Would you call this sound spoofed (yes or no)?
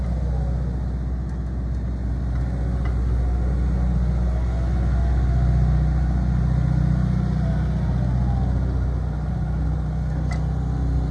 no